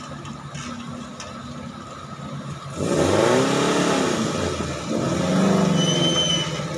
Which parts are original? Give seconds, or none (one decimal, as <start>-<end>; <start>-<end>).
0.0-6.8